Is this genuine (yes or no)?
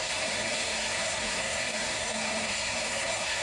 no